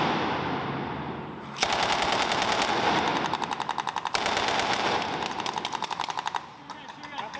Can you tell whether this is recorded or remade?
recorded